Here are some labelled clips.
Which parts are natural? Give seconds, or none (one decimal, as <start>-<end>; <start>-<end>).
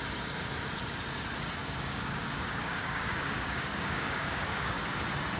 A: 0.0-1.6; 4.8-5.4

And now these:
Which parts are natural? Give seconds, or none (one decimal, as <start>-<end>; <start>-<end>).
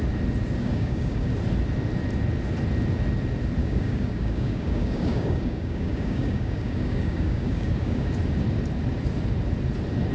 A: 0.0-0.6; 1.3-3.6; 8.1-10.1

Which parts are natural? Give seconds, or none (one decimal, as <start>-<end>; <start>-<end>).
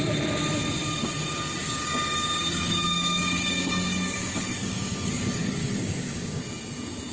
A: 0.0-1.6; 5.1-5.6; 6.4-7.1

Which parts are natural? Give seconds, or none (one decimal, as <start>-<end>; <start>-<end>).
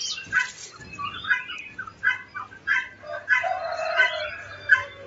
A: 0.0-5.1